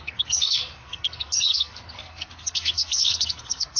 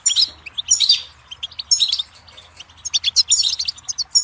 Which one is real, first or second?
second